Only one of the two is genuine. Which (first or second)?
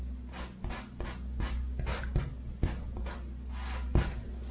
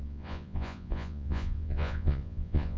first